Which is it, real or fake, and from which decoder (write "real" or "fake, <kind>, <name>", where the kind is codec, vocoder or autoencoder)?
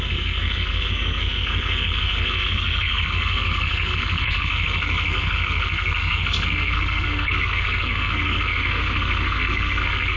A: fake, codec, SNAC